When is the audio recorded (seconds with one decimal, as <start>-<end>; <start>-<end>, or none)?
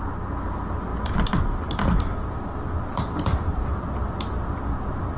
0.0-5.2